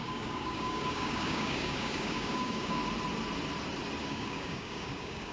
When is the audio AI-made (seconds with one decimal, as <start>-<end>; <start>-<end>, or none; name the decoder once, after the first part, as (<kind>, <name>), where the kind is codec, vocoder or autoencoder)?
0.0-2.8 (codec, DAC); 4.0-5.3